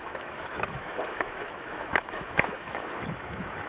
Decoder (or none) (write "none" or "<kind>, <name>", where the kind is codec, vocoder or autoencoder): autoencoder, DAC-VAE